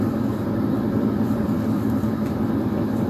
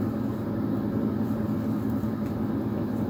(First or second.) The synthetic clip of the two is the first